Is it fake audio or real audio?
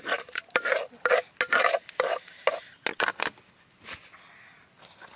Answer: real